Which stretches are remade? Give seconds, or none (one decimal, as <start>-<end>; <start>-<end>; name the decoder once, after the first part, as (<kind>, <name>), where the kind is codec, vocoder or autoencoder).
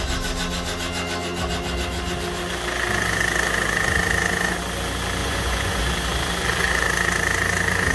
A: 5.2-5.8 (vocoder, Vocos)